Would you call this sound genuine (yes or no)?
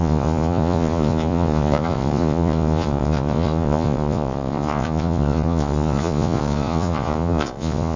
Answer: no